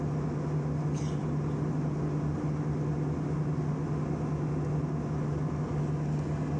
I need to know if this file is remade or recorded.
recorded